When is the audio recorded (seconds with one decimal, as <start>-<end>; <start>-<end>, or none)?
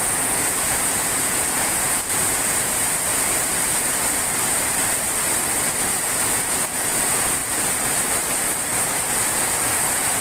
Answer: 3.1-5.8; 7.4-9.3